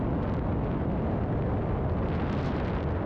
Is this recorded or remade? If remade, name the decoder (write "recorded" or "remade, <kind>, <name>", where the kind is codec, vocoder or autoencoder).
recorded